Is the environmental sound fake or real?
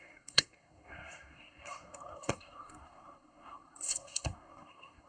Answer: fake